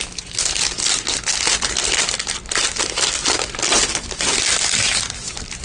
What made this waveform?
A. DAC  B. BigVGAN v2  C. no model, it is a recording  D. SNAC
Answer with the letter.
C